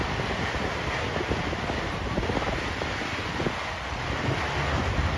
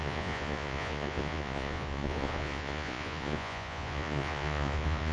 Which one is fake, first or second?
second